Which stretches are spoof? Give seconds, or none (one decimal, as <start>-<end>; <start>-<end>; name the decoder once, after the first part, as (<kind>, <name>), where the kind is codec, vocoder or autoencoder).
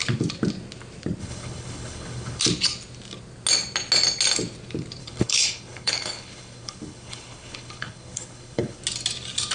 1.2-2.4 (codec, HILCodec); 5.0-8.8